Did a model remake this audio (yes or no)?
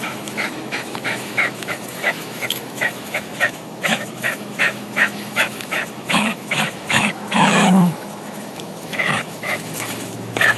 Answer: yes